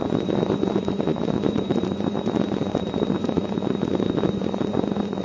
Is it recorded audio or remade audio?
remade